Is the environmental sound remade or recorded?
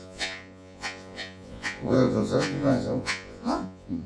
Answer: remade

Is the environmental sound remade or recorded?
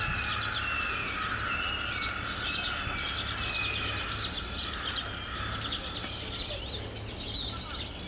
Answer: recorded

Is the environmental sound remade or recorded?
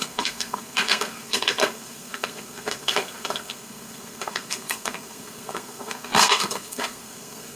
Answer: remade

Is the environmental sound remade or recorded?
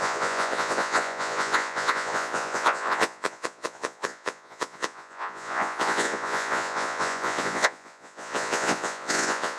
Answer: remade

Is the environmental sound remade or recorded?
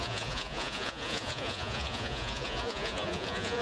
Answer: remade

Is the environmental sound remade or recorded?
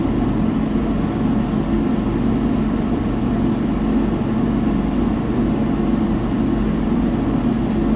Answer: recorded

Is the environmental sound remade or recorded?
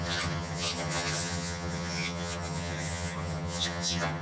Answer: remade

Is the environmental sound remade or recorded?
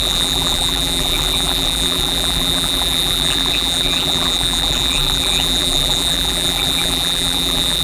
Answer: remade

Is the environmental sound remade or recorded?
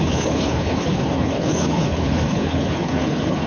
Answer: remade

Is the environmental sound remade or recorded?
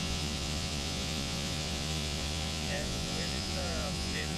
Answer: remade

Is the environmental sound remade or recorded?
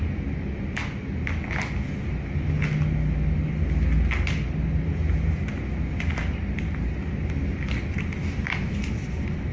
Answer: recorded